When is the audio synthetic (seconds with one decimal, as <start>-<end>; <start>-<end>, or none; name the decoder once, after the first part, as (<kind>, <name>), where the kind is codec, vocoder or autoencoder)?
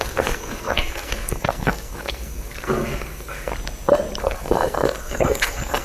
0.0-3.5 (codec, SNAC); 4.2-5.8